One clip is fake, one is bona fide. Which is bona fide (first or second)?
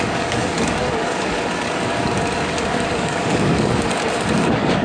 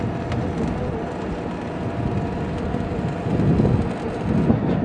second